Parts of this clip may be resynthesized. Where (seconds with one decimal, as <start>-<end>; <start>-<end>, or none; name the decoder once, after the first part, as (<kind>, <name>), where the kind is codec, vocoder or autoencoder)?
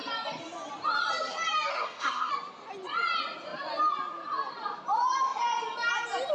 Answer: 1.7-2.3 (codec, SNAC)